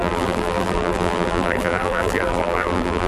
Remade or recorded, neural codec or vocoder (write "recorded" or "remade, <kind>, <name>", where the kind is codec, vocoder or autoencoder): remade, vocoder, BigVGAN v2